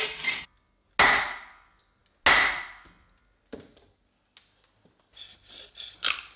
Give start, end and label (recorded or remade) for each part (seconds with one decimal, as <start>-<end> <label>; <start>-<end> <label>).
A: 0.0-6.4 recorded